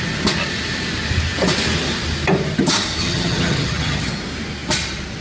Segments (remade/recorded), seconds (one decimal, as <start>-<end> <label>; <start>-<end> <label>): 0.0-3.0 recorded; 3.0-4.1 remade; 4.1-5.2 recorded